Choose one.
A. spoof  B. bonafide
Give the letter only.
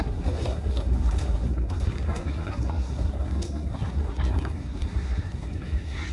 A